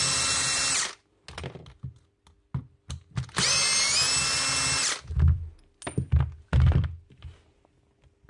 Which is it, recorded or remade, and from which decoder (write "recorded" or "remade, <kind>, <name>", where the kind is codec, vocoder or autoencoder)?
recorded